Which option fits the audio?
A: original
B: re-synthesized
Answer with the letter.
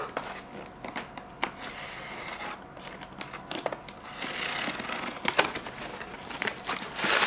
A